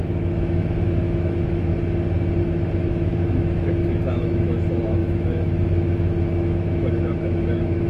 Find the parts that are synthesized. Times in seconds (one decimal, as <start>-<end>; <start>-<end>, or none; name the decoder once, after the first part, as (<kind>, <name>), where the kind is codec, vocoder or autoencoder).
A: 0.0-1.7 (autoencoder, DAC-VAE); 2.4-7.9